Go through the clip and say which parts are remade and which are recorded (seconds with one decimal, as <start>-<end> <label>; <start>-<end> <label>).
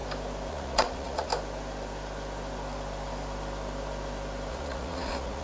0.0-0.5 recorded; 0.5-1.3 remade; 1.3-4.5 recorded; 4.5-5.4 remade